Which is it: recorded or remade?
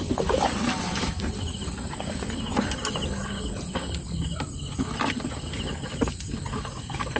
recorded